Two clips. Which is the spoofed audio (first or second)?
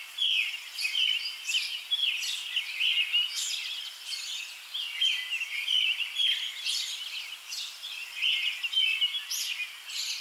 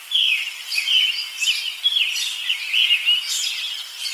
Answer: second